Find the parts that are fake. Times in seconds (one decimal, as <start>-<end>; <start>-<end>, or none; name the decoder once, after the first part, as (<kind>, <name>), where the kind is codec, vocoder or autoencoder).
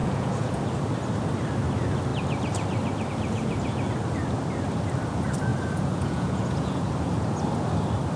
0.0-0.6 (vocoder, Vocos); 5.5-6.9